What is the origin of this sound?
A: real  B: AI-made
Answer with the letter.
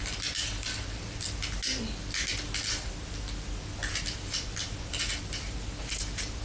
A